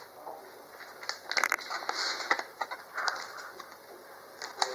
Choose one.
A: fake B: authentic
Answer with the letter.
B